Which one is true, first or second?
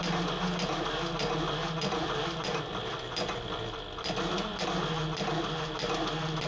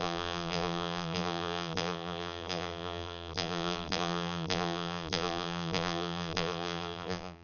first